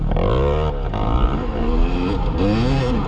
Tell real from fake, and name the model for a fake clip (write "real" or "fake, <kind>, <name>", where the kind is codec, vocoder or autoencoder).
real